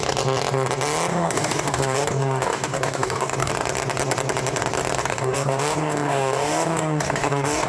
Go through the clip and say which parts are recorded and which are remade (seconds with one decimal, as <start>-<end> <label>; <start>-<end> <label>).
0.0-1.1 recorded; 1.1-3.5 remade; 3.5-5.0 recorded; 5.0-7.7 remade